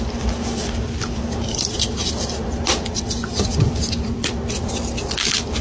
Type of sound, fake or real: fake